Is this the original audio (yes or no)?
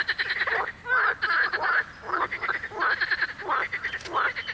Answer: no